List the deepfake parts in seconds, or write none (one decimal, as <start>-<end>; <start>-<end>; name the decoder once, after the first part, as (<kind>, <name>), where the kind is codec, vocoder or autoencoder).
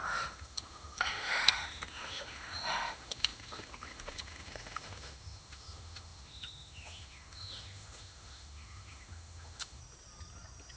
0.0-9.8 (autoencoder, DAC-VAE)